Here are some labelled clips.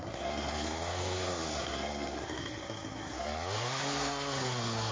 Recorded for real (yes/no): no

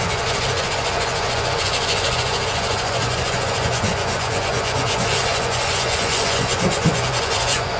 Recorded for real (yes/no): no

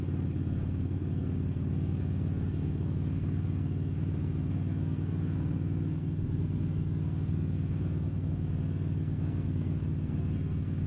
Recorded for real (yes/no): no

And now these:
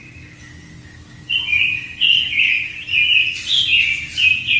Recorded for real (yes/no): yes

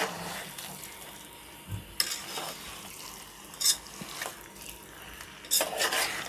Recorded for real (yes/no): yes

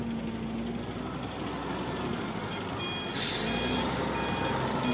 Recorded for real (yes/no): yes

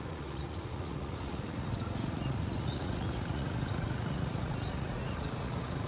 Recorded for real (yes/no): no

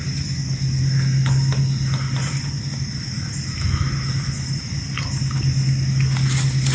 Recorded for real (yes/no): yes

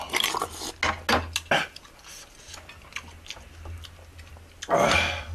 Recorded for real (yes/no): yes